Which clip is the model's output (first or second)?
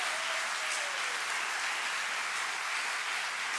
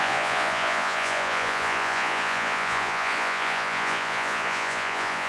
second